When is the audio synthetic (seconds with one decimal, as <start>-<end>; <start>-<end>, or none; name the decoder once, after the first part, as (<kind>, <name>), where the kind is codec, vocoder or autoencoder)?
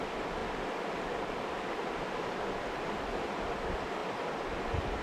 none